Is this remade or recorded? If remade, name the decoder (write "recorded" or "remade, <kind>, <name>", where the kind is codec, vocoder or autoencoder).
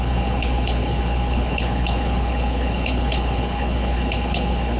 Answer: remade, codec, HILCodec